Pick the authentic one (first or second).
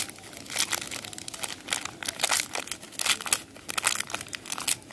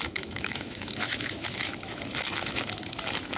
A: first